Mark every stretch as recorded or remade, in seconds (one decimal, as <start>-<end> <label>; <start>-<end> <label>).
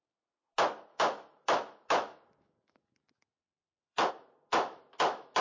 0.0-0.9 recorded; 0.9-4.1 remade; 4.1-4.5 recorded; 4.5-5.4 remade